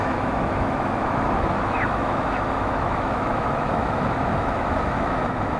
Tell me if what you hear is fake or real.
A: fake